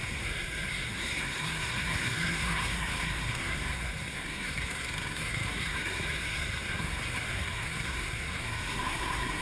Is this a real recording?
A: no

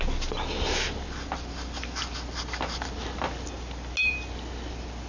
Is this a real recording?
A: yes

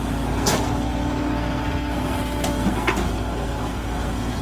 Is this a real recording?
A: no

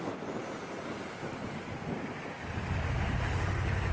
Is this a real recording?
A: yes